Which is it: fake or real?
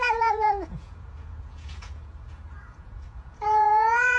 fake